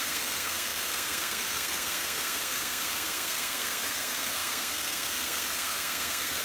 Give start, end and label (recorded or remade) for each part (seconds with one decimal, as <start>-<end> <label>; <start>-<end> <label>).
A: 0.0-6.4 remade